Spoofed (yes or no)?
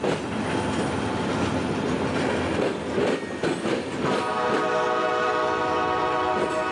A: no